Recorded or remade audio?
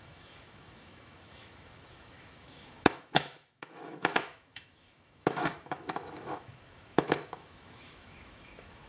remade